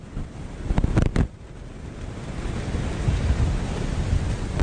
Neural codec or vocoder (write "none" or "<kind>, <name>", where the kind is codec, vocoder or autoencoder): none